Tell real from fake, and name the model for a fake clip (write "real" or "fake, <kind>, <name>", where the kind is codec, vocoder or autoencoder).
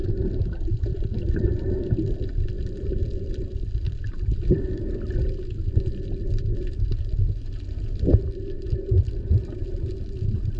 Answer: real